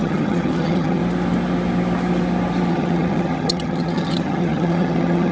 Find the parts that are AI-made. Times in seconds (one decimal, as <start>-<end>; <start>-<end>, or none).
0.0-1.0; 2.7-5.3